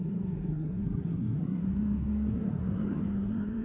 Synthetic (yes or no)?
yes